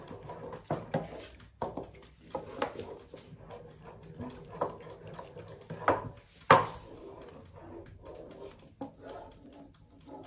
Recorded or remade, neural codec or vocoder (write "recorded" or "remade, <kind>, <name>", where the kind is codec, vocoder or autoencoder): recorded